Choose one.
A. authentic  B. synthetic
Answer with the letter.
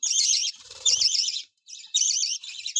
B